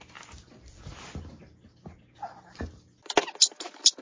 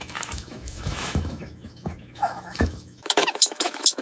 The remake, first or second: second